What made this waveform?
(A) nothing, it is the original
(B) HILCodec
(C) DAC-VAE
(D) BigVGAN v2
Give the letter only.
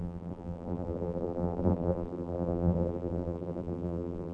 D